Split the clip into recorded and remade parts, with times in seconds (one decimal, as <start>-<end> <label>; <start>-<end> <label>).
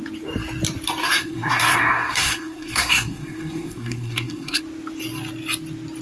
0.0-1.0 recorded; 1.0-4.6 remade; 4.6-6.0 recorded